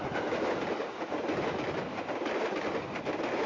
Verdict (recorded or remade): recorded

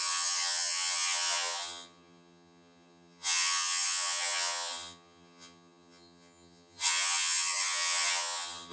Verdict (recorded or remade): remade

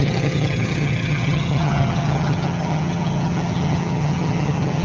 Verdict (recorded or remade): remade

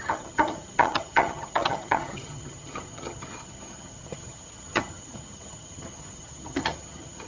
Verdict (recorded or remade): remade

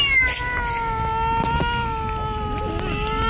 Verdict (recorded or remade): recorded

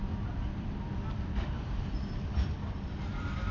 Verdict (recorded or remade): recorded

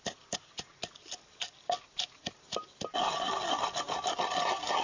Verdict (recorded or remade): recorded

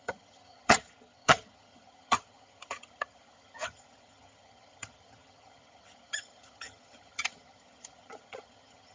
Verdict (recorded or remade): remade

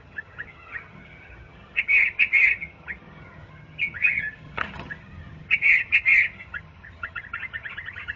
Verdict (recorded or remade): remade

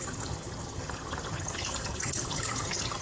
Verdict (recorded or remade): remade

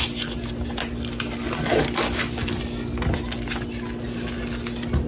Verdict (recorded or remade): recorded